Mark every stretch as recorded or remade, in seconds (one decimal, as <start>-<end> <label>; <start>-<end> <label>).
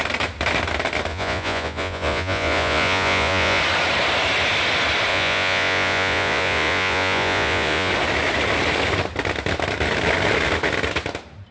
0.0-1.1 recorded; 1.1-3.6 remade; 3.6-5.1 recorded; 5.1-7.9 remade; 7.9-11.5 recorded